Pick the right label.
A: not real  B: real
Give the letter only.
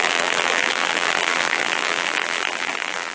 A